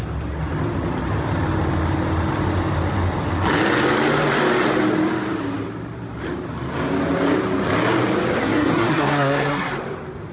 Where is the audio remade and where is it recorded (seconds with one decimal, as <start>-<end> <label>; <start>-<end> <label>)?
0.0-8.4 recorded; 8.4-9.7 remade; 9.7-10.3 recorded